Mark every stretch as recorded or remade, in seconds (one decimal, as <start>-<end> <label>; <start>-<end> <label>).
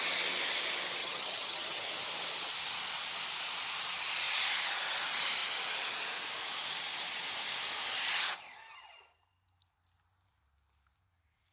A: 0.0-1.0 recorded; 1.0-1.9 remade; 1.9-11.5 recorded